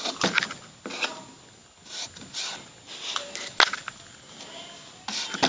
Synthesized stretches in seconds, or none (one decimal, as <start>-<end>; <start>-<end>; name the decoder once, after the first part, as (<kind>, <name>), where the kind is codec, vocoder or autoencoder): none